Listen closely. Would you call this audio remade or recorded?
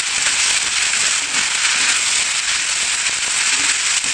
recorded